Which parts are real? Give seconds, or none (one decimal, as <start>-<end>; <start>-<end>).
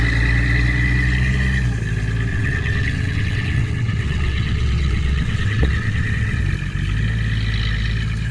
0.0-2.3; 6.4-8.3